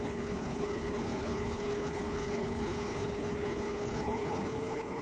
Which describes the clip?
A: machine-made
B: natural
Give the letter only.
A